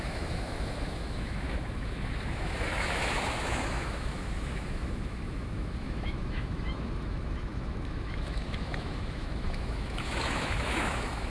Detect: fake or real fake